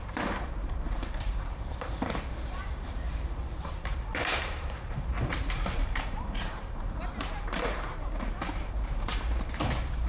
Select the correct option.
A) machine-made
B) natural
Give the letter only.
A